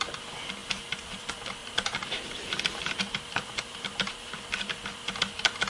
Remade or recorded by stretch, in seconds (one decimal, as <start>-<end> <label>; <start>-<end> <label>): 0.0-0.6 recorded; 0.6-1.2 remade; 1.2-1.6 recorded; 1.6-3.6 remade; 3.6-5.7 recorded